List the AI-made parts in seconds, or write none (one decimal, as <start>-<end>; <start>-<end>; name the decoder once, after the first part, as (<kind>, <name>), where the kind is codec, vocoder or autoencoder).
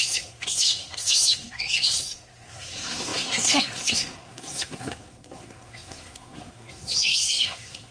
0.0-7.9 (codec, SNAC)